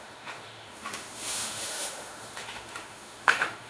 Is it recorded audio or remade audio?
remade